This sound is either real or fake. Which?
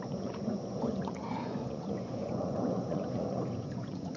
fake